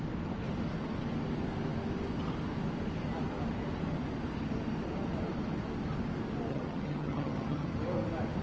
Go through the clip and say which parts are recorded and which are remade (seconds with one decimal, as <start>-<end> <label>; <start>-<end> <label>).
0.0-6.5 recorded; 6.5-7.7 remade; 7.7-8.4 recorded